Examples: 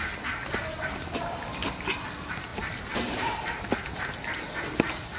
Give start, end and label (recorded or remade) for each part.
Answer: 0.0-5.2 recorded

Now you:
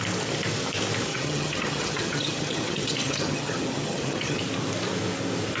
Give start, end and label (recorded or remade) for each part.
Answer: 0.0-1.1 recorded; 1.1-4.4 remade; 4.4-5.6 recorded

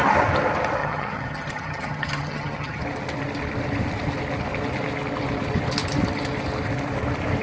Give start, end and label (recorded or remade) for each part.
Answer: 0.0-0.8 recorded; 0.8-2.8 remade; 2.8-7.4 recorded

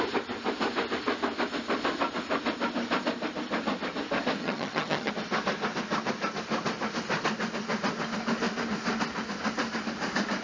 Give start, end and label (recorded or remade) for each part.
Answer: 0.0-4.4 recorded; 4.4-5.1 remade; 5.1-10.4 recorded